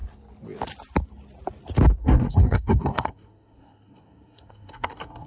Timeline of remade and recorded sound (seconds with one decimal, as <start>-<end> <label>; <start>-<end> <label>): 0.0-2.0 recorded; 2.0-5.3 remade